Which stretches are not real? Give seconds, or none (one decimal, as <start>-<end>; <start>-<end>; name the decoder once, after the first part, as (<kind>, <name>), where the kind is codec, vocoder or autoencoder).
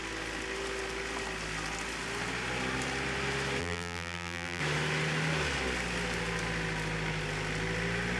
3.6-4.6 (vocoder, BigVGAN v2)